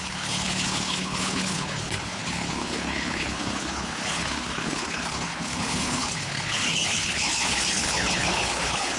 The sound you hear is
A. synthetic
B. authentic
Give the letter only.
A